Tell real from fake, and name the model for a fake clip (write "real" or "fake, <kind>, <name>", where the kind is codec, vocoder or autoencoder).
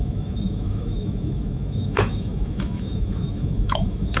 fake, autoencoder, DAC-VAE